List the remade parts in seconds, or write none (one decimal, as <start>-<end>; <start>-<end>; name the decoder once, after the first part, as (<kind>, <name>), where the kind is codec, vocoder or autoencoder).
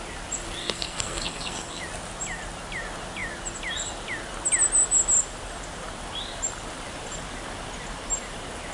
0.6-1.8 (codec, SNAC)